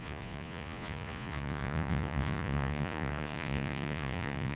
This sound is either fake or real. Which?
fake